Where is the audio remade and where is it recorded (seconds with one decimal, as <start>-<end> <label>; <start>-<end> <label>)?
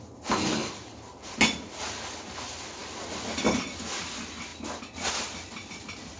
0.0-6.2 recorded